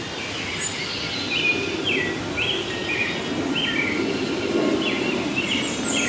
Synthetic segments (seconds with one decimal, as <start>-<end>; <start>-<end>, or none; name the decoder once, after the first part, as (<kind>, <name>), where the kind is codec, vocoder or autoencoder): 0.0-1.5 (vocoder, BigVGAN v2); 2.1-6.1